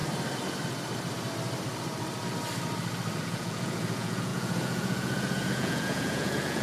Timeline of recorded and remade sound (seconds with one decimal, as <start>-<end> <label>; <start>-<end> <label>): 0.0-3.2 recorded; 3.2-6.6 remade